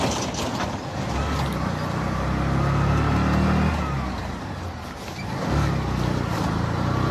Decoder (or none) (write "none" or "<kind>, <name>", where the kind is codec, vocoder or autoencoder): none